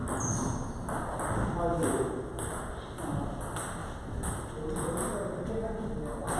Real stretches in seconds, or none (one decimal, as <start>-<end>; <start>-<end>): 0.0-3.8; 4.3-6.4